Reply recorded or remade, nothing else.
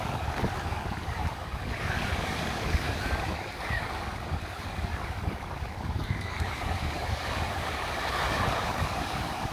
remade